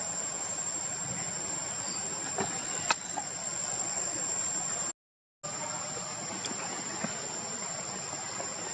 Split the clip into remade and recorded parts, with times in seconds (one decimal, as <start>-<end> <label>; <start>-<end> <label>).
0.0-2.6 recorded; 2.6-4.2 remade; 4.2-8.7 recorded